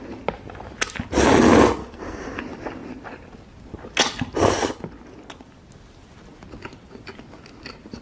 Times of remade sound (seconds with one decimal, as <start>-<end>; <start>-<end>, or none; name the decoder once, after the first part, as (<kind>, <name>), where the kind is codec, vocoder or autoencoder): 1.8-2.4 (codec, SNAC)